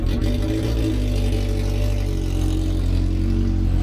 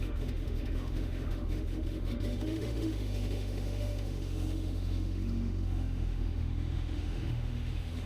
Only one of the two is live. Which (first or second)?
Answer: first